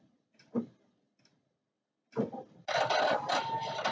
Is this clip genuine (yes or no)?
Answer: yes